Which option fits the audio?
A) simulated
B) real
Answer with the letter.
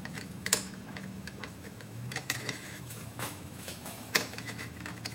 A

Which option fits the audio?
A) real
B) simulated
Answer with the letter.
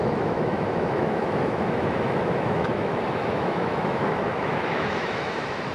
B